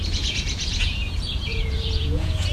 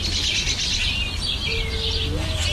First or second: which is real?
second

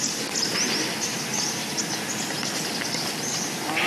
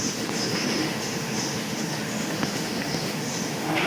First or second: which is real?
first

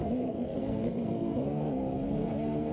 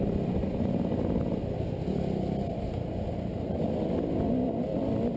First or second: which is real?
second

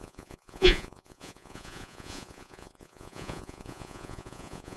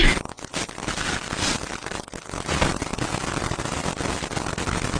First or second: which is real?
second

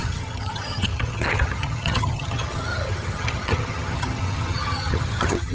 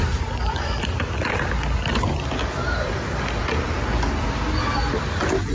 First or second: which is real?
second